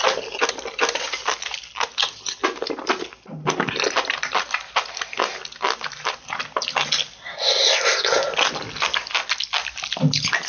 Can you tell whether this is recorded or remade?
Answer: recorded